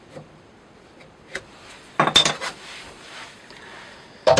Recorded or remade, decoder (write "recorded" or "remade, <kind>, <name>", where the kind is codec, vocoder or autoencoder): recorded